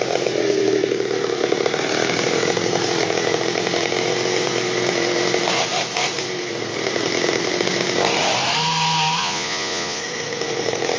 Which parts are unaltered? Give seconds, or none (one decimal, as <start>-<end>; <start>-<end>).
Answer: 0.0-9.2; 10.0-11.0